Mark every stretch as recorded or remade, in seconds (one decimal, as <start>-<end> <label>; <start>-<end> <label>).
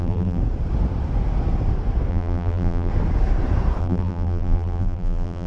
0.0-0.4 remade; 0.4-2.1 recorded; 2.1-2.9 remade; 2.9-3.8 recorded; 3.8-5.5 remade